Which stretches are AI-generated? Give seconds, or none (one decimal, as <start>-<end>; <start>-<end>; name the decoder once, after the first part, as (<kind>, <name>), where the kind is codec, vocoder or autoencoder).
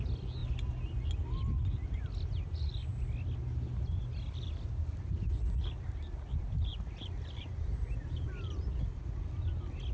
none